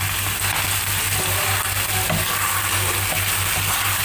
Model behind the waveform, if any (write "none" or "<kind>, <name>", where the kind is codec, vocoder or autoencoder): none